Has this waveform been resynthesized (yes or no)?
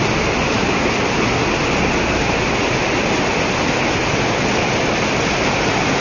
no